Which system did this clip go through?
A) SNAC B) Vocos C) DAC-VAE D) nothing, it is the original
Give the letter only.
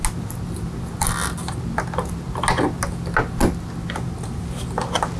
D